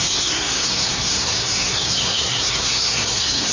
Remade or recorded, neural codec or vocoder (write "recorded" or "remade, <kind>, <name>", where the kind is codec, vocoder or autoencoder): remade, codec, SNAC